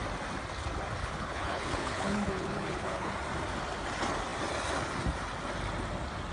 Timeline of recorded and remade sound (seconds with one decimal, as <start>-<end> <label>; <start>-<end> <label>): 0.0-1.0 recorded; 1.0-3.1 remade; 3.1-6.3 recorded